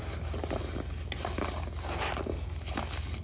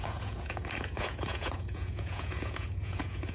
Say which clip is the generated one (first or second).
second